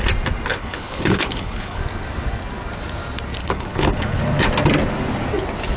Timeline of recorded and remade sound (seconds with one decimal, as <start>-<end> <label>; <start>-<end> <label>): 0.0-0.5 recorded; 0.5-1.8 remade; 1.8-3.4 recorded; 3.4-4.2 remade; 4.2-5.8 recorded